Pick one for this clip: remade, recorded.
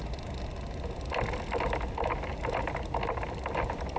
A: recorded